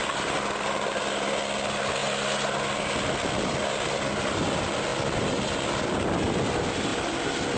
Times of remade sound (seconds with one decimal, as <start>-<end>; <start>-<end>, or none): none